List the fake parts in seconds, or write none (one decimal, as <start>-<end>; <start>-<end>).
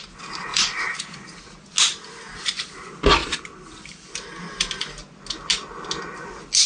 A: 0.5-1.4; 3.2-4.4